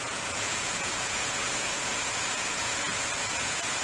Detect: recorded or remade remade